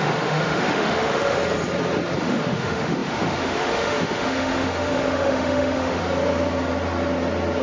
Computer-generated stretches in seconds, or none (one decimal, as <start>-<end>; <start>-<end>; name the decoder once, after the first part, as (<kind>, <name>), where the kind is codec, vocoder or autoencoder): 0.0-1.4 (autoencoder, DAC-VAE); 2.2-6.0